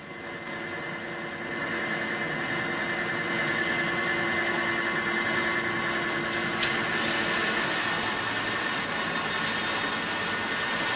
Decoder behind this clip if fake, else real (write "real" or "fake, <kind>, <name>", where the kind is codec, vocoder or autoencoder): real